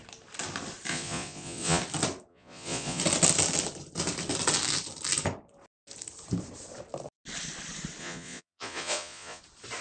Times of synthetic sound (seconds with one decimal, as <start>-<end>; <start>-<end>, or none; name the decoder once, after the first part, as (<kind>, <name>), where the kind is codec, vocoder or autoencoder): 0.9-1.8 (vocoder, Vocos); 2.3-3.0; 8.0-9.4